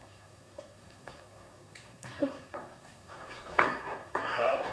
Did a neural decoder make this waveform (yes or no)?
yes